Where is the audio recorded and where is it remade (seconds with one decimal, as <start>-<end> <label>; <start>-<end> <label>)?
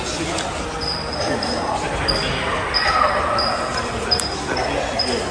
0.0-0.8 recorded; 0.8-2.9 remade; 2.9-5.3 recorded